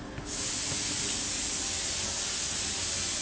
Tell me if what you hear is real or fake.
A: real